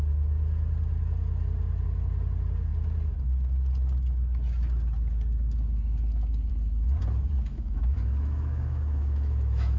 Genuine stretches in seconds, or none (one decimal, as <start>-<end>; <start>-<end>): 0.0-7.5